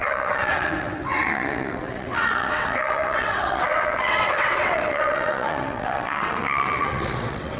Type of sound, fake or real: fake